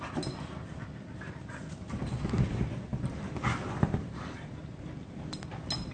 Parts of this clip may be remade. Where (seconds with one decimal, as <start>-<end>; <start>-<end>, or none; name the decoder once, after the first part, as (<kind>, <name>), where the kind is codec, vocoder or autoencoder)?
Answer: 2.9-4.9 (vocoder, BigVGAN v2)